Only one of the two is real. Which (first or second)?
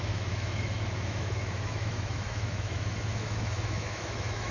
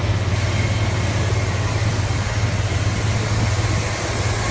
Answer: second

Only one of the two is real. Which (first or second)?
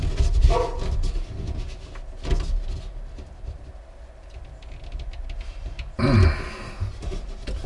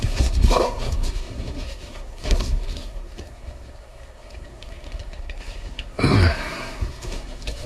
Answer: first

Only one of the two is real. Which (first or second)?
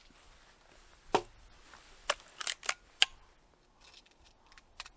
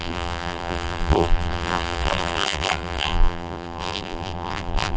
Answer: first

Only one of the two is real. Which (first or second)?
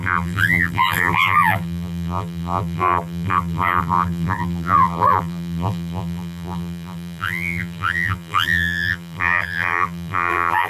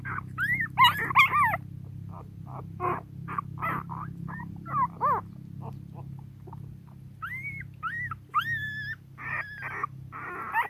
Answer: second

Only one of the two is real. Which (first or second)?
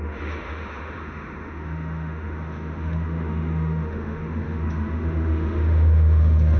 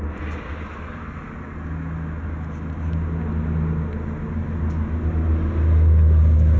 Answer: second